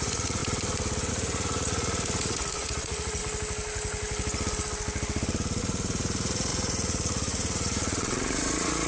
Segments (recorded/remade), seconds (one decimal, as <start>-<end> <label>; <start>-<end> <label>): 0.0-0.4 remade; 0.4-1.1 recorded; 1.1-3.2 remade; 3.2-5.6 recorded; 5.6-8.9 remade